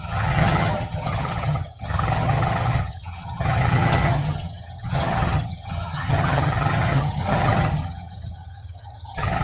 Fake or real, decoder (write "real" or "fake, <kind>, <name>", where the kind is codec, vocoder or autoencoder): fake, vocoder, HiFi-GAN